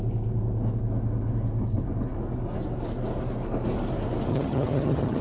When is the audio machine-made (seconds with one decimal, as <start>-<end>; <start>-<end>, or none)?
4.3-5.2